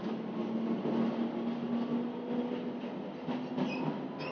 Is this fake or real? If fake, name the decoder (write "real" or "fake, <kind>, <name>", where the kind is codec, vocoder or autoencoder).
real